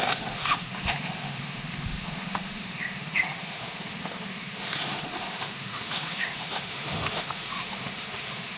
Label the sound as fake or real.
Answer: fake